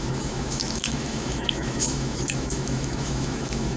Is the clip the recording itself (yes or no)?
no